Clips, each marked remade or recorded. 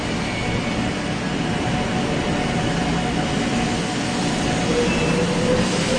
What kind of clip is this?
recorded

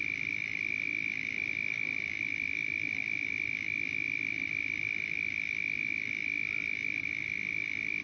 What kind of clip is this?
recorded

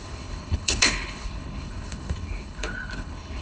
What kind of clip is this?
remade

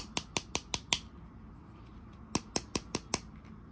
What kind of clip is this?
recorded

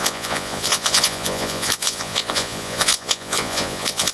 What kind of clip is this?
remade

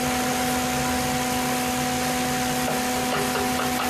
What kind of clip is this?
recorded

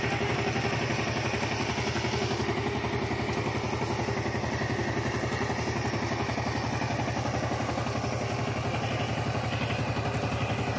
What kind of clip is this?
recorded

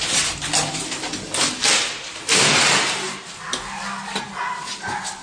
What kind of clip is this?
recorded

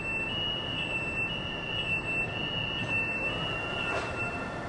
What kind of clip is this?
recorded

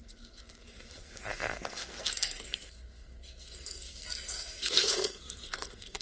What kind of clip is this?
remade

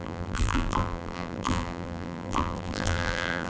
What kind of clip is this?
remade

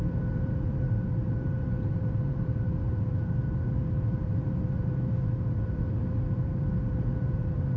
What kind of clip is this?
remade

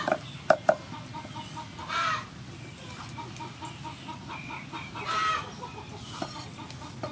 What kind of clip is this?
recorded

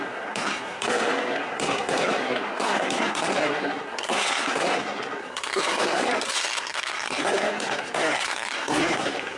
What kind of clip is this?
remade